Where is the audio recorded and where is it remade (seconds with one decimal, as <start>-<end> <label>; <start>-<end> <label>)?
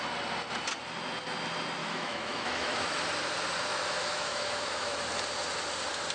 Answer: 0.0-1.8 recorded; 1.8-3.0 remade; 3.0-3.7 recorded; 3.7-5.0 remade; 5.0-6.1 recorded